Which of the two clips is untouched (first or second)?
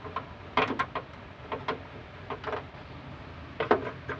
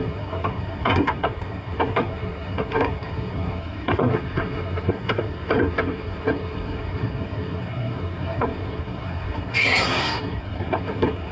first